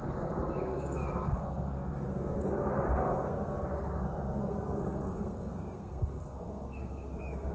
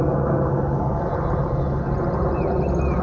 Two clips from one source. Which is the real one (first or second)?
second